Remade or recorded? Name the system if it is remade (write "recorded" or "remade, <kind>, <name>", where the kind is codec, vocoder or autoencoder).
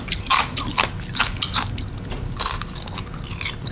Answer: recorded